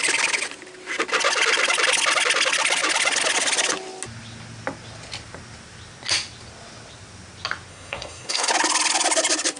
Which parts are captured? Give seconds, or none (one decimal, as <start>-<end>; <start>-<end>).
0.0-7.7; 8.5-9.6